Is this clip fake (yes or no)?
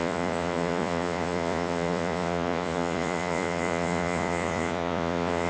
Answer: yes